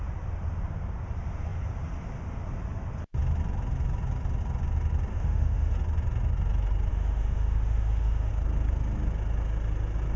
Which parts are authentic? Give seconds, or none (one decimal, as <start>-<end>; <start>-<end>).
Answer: 0.0-5.1; 5.7-6.9; 8.3-10.2